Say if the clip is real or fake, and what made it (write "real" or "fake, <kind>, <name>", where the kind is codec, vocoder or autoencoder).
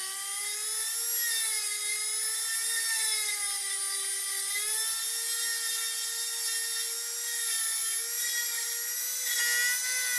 real